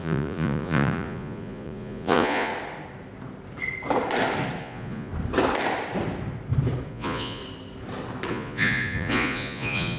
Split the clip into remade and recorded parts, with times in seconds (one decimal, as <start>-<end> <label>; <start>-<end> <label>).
0.0-2.5 remade; 2.5-4.6 recorded; 4.6-5.1 remade; 5.1-6.9 recorded; 6.9-7.4 remade; 7.4-8.3 recorded; 8.3-10.0 remade